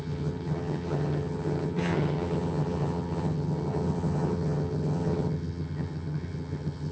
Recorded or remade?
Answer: remade